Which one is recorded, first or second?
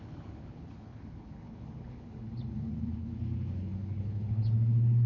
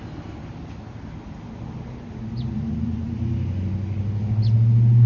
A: second